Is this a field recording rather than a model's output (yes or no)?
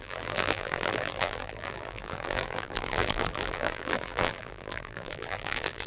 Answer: no